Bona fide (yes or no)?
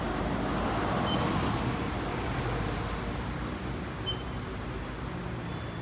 yes